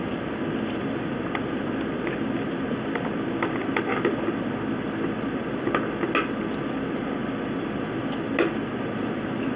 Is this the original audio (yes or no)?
yes